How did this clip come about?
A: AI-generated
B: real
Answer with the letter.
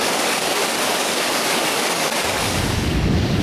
A